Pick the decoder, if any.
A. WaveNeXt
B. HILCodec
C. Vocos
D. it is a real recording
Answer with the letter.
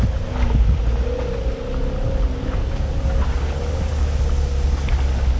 D